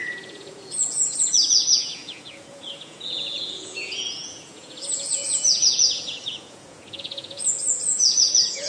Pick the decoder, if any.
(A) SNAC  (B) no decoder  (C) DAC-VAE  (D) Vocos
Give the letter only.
D